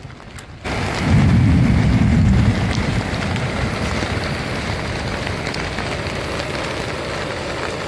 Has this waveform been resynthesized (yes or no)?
no